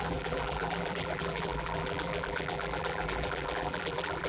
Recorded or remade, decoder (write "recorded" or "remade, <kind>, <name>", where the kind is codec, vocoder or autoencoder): remade, vocoder, BigVGAN v2